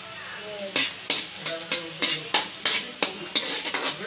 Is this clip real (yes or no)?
yes